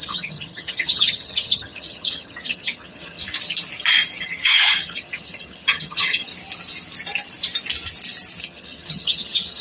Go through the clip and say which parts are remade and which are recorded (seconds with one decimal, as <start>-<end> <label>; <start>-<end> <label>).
0.0-3.2 remade; 3.2-4.2 recorded; 4.2-6.3 remade; 6.3-8.4 recorded; 8.4-9.6 remade